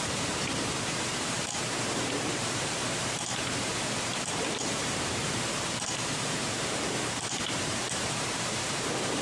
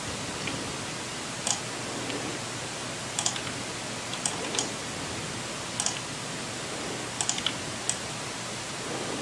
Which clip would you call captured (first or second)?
second